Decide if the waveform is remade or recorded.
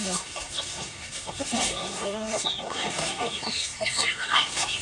remade